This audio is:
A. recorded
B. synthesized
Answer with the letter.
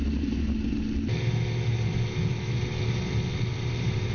A